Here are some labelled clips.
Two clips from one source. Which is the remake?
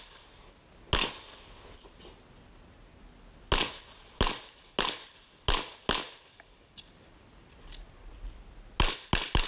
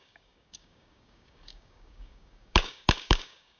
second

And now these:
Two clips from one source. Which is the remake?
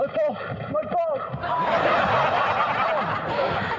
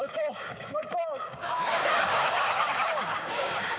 second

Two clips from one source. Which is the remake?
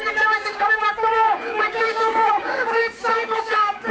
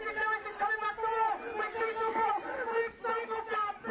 first